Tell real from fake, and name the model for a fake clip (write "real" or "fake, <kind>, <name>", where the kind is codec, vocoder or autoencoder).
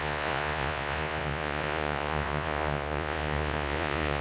fake, vocoder, Vocos